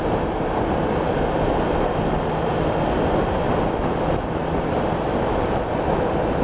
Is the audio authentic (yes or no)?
yes